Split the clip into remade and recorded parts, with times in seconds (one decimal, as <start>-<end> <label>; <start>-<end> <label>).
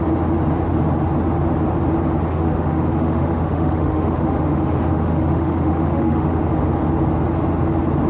0.0-2.3 recorded; 2.3-6.4 remade; 6.4-8.1 recorded